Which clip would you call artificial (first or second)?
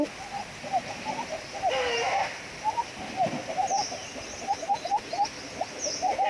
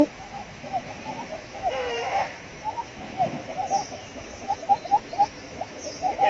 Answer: second